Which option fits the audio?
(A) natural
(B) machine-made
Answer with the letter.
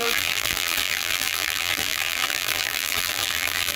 B